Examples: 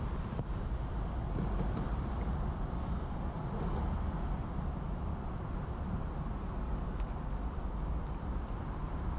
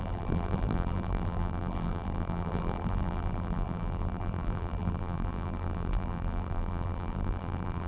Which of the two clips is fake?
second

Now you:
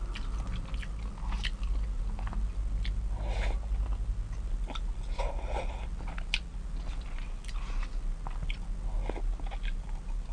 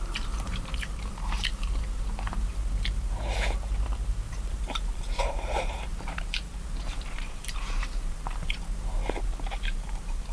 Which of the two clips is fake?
second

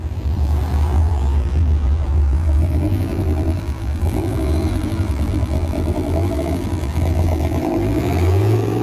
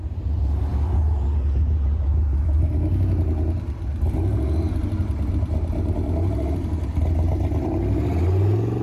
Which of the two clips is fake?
first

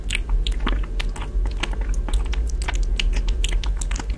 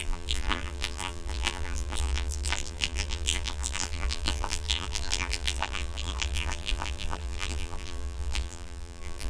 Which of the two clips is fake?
second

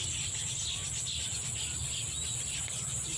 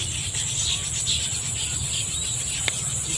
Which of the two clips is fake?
second